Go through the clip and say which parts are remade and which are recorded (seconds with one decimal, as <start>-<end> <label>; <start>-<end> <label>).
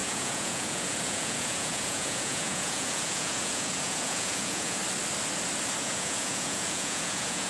0.0-4.8 remade; 4.8-5.8 recorded; 5.8-7.5 remade